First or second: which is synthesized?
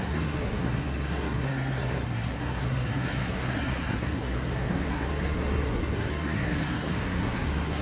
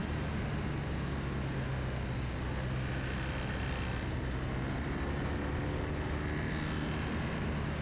first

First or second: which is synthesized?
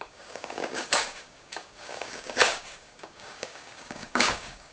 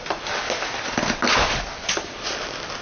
first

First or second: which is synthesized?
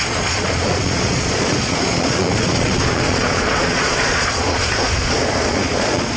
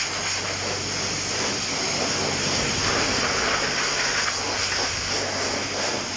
first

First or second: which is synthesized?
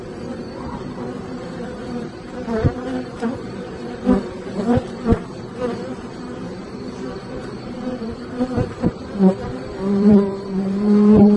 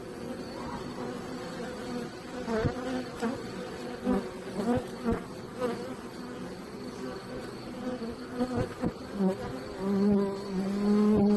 first